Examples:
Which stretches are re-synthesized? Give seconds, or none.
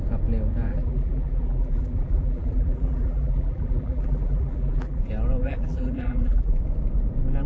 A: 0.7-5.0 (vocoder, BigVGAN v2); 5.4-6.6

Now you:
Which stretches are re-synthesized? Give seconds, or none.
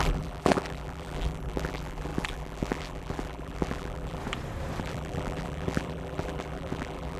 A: 0.0-4.2 (vocoder, BigVGAN v2); 4.8-7.2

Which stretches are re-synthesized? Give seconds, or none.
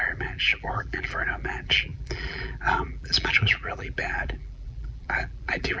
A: 0.0-5.8 (vocoder, BigVGAN v2)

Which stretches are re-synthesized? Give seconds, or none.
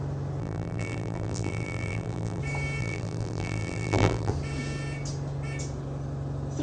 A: 0.4-2.4 (vocoder, BigVGAN v2); 2.8-4.3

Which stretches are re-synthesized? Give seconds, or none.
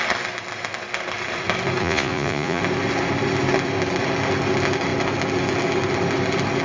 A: 1.8-2.6 (vocoder, Vocos)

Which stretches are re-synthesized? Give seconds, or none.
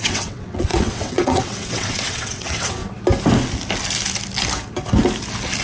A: 0.0-2.8 (vocoder, WaveNeXt)